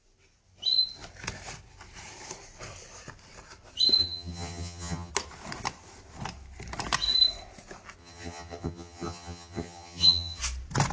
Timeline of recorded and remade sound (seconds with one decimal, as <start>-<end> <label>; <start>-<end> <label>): 0.0-4.0 recorded; 4.0-5.1 remade; 5.1-8.0 recorded; 8.0-10.4 remade; 10.4-10.9 recorded